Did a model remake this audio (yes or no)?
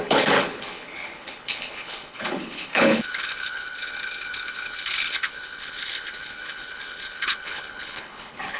yes